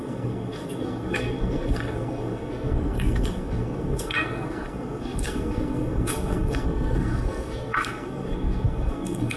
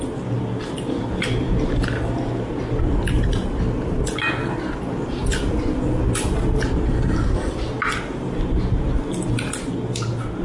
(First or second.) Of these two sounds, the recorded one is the second